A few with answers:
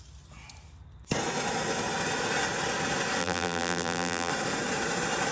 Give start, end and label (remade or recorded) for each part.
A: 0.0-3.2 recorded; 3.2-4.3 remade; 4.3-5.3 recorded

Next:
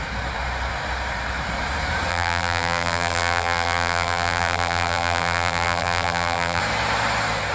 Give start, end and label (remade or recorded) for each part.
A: 0.0-2.1 recorded; 2.1-6.6 remade; 6.6-7.5 recorded